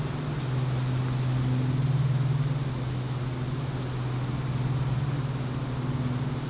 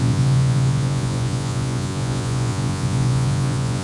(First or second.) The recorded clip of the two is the first